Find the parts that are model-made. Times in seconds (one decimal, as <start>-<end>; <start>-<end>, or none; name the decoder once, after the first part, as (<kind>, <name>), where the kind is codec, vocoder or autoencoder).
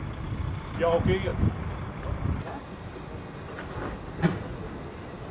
none